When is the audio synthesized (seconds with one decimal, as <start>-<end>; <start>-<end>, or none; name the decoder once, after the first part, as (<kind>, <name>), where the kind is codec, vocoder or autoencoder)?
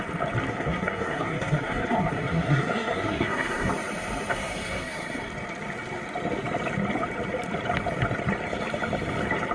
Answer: 0.5-3.7 (codec, SNAC); 4.3-5.3